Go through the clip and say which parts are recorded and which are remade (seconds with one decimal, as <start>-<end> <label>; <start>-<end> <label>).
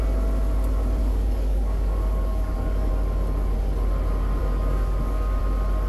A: 0.0-1.0 recorded; 1.0-2.9 remade; 2.9-4.4 recorded; 4.4-5.4 remade; 5.4-5.9 recorded